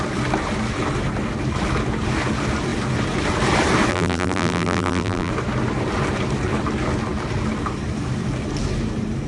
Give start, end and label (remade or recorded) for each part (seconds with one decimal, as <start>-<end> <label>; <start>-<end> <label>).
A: 0.0-3.9 recorded; 3.9-5.3 remade; 5.3-9.3 recorded